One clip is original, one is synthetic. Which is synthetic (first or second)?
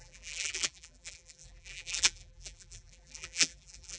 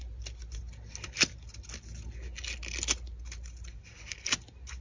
first